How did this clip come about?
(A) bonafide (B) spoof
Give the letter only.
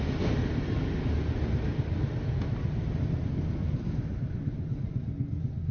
A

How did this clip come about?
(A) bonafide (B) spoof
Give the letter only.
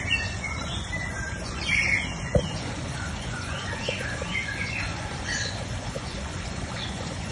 B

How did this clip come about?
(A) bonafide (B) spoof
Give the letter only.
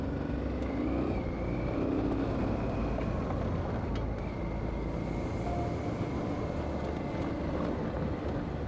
A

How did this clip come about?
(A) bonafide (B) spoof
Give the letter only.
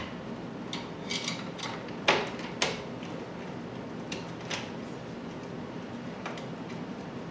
A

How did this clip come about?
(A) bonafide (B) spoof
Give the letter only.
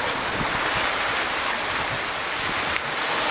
A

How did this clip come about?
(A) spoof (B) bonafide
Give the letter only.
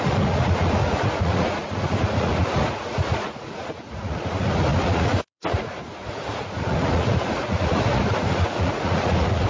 A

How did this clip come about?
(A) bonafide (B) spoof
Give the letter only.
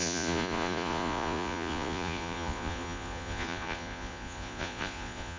B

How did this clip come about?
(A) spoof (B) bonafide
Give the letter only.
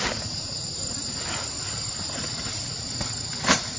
B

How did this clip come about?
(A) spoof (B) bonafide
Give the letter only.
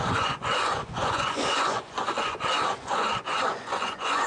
A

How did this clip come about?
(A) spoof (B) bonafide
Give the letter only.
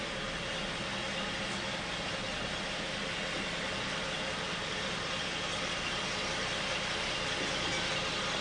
B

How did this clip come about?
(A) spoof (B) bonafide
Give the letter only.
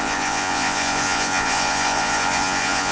A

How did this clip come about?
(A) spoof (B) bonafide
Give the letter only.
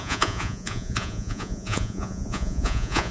A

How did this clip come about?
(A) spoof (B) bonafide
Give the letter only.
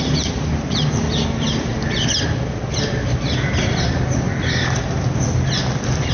B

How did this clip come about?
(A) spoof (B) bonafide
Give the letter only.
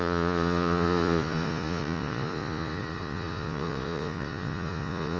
A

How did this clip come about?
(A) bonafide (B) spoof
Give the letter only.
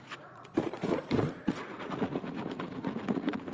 B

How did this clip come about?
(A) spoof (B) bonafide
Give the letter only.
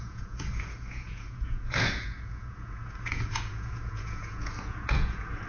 A